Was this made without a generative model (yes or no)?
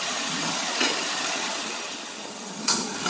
no